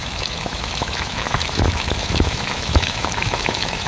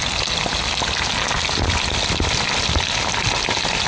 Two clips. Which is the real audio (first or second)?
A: second